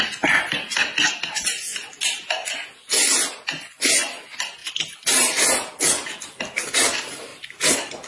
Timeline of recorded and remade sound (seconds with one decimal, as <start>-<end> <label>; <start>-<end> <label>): 0.0-4.6 recorded; 4.6-6.2 remade; 6.2-7.3 recorded; 7.3-8.1 remade